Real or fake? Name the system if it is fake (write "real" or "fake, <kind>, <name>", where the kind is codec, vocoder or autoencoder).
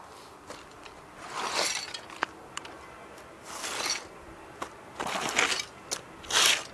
real